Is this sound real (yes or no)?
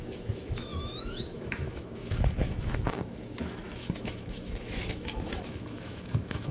no